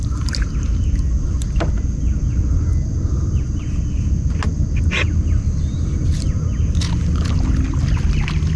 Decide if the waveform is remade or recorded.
recorded